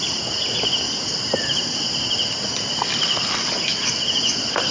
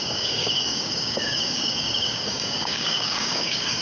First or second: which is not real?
second